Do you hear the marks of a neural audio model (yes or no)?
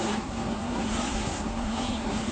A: yes